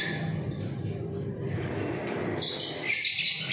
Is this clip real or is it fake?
fake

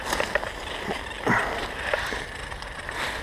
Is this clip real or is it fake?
real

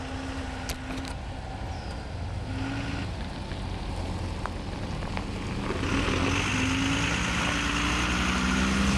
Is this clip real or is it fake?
real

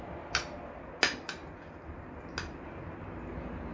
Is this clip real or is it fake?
real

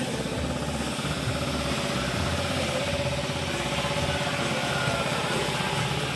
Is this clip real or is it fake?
real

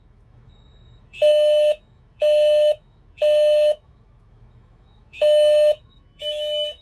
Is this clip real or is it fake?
fake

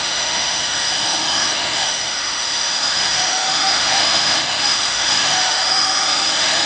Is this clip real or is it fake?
fake